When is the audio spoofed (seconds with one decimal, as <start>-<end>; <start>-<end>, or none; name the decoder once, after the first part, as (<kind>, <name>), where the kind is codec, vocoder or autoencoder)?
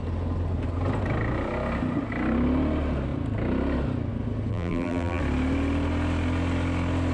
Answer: 4.5-5.2 (vocoder, BigVGAN v2)